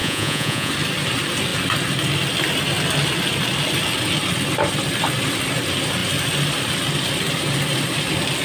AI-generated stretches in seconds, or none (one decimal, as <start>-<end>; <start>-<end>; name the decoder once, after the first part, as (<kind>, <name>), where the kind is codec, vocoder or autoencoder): 0.0-0.7 (vocoder, Vocos)